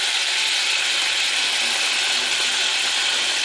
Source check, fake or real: real